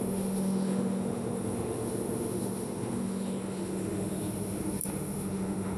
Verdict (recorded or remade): remade